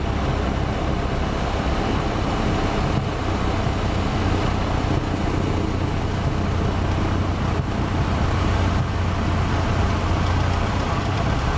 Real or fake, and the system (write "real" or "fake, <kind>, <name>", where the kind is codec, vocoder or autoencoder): real